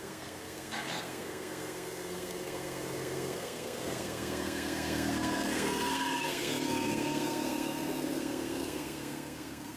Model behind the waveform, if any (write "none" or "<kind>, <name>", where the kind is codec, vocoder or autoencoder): codec, SNAC